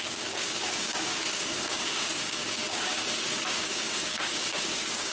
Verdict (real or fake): fake